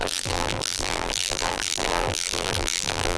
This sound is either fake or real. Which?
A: fake